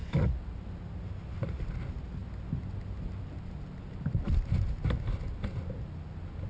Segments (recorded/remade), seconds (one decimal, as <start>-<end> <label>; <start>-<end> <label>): 0.0-6.5 recorded